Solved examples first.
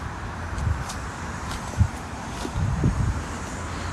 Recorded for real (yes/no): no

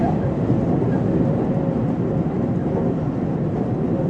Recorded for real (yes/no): yes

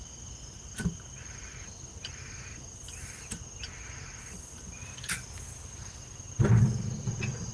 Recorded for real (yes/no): yes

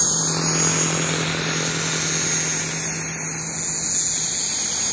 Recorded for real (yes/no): yes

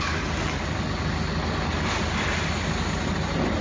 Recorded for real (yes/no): yes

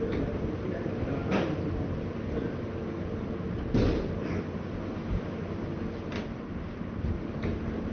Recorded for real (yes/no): yes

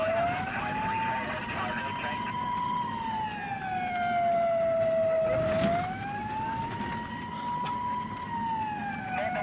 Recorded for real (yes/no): yes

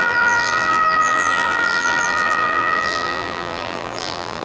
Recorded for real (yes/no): no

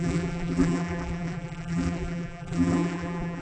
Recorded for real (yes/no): no